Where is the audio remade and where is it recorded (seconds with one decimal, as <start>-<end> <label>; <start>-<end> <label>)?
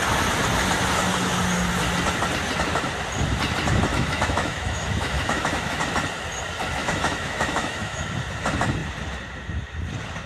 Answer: 0.0-3.9 recorded; 3.9-5.8 remade; 5.8-6.8 recorded; 6.8-8.0 remade; 8.0-10.3 recorded